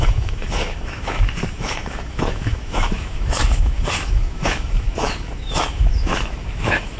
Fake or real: fake